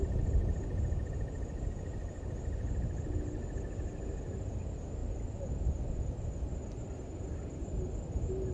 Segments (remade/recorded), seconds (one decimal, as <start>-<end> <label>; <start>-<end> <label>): 0.0-5.0 recorded; 5.0-6.9 remade; 6.9-8.5 recorded

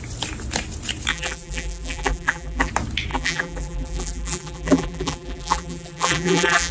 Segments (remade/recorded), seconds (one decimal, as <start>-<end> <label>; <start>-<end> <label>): 0.0-1.1 recorded; 1.1-2.7 remade; 2.7-3.1 recorded; 3.1-6.7 remade

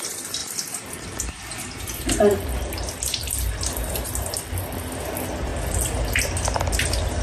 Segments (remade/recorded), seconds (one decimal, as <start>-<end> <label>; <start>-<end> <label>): 0.0-5.5 remade; 5.5-6.7 recorded; 6.7-7.2 remade

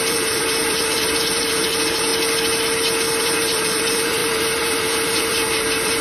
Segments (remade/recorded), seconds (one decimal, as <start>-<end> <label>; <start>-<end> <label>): 0.0-2.1 remade; 2.1-3.2 recorded; 3.2-6.0 remade

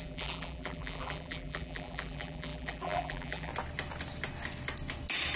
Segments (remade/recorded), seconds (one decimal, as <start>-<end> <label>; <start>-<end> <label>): 0.0-3.5 remade; 3.5-5.4 recorded

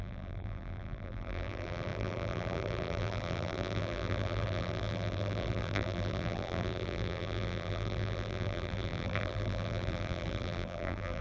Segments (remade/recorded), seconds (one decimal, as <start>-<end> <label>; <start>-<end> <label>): 0.0-11.2 remade

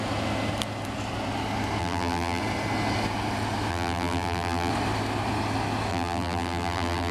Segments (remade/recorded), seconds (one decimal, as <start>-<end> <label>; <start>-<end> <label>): 0.0-1.8 recorded; 1.8-2.4 remade; 2.4-3.7 recorded; 3.7-4.7 remade; 4.7-5.9 recorded; 5.9-7.1 remade